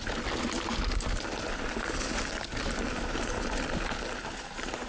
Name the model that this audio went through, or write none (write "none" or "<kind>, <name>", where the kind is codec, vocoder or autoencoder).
none